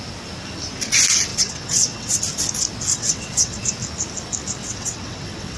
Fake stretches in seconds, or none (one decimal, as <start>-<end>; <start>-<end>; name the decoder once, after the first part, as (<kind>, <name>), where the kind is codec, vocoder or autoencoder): 1.3-2.2 (vocoder, WaveNeXt); 2.9-3.6; 4.6-5.6